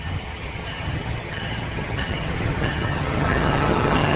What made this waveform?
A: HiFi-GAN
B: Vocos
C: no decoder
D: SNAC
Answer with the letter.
A